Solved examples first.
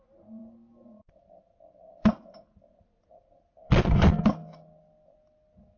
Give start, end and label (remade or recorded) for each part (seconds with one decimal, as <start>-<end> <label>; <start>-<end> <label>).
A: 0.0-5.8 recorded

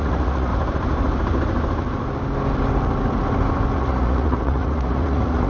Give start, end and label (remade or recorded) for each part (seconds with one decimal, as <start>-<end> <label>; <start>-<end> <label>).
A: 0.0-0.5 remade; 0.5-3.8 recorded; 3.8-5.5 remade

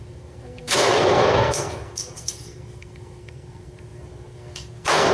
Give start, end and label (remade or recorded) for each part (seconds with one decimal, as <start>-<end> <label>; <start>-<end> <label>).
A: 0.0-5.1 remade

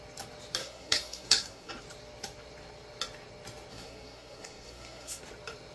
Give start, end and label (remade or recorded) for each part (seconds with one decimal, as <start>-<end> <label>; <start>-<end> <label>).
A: 0.0-0.6 recorded; 0.6-1.7 remade; 1.7-3.7 recorded; 3.7-5.2 remade; 5.2-5.7 recorded

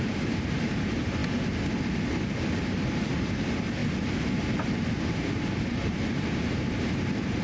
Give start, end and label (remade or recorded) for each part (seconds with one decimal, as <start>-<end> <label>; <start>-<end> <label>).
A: 0.0-1.2 remade; 1.2-2.6 recorded; 2.6-3.8 remade; 3.8-5.0 recorded; 5.0-7.4 remade

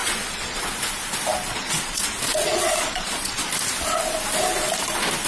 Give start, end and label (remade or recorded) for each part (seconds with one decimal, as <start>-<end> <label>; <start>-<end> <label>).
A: 0.0-0.6 remade; 0.6-1.5 recorded; 1.5-3.5 remade; 3.5-5.3 recorded

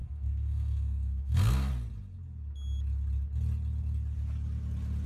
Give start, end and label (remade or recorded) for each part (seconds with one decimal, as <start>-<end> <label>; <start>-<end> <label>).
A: 0.0-1.7 remade; 1.7-5.1 recorded